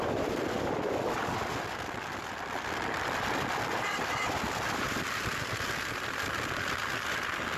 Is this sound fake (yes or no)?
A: no